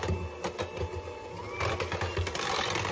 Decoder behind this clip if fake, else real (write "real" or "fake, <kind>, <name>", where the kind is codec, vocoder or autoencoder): real